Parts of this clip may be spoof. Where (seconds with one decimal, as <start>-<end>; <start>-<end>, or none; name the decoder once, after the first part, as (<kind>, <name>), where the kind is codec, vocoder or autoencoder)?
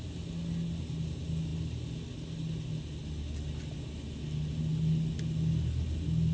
none